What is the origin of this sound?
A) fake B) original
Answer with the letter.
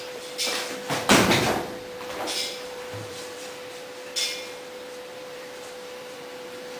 A